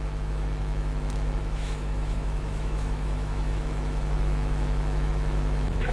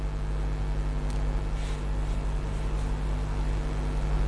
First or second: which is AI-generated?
first